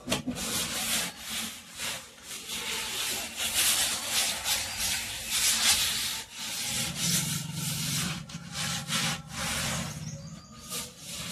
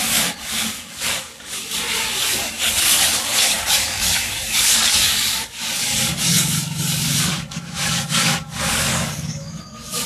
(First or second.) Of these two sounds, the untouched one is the first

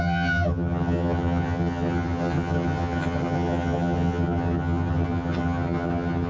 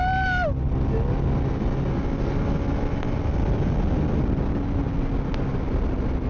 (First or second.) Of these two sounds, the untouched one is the second